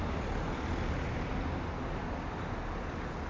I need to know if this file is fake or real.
real